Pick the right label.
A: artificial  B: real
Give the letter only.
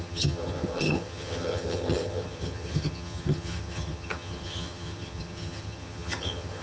A